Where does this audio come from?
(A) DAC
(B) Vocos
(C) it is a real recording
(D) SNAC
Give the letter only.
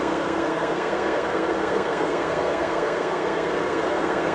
D